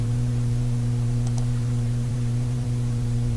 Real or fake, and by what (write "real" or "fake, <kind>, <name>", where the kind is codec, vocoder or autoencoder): fake, vocoder, BigVGAN v2